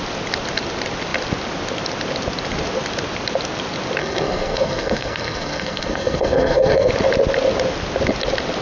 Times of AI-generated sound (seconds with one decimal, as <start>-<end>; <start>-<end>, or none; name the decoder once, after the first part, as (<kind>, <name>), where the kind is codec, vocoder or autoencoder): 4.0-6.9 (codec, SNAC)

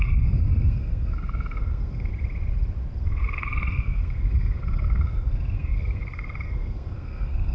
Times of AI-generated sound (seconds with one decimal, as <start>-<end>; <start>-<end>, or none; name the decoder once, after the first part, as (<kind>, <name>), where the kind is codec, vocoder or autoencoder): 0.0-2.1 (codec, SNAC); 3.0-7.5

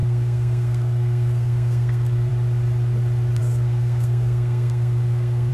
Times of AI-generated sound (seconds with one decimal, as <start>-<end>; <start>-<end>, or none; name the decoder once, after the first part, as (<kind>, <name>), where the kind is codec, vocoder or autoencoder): 0.0-2.3 (codec, SNAC); 3.4-5.5

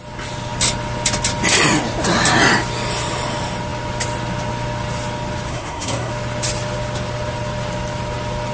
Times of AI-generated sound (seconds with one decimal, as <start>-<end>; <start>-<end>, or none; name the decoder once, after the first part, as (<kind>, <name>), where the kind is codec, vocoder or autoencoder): 5.5-6.1 (codec, SNAC)

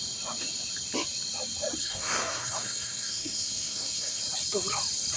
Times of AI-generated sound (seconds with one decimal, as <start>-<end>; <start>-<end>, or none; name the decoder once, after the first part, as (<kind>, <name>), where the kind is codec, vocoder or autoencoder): 1.8-4.2 (codec, SNAC)

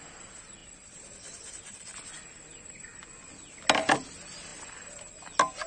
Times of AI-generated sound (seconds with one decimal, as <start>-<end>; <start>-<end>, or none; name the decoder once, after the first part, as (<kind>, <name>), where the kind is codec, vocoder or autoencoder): none

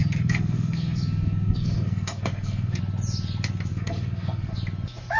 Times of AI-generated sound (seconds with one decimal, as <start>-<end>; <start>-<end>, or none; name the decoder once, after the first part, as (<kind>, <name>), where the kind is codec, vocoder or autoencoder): 0.0-2.8 (codec, SNAC); 3.7-4.5

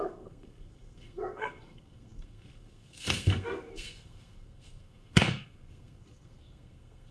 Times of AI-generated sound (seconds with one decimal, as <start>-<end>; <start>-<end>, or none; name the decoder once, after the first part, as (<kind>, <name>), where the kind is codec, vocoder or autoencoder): 0.0-7.1 (codec, SNAC)